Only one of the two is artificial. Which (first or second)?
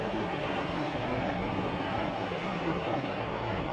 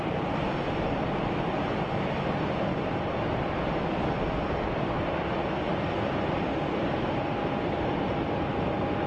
first